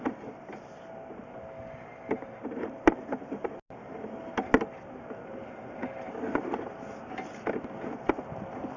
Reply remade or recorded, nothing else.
recorded